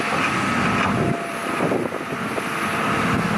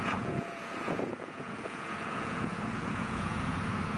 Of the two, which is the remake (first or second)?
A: second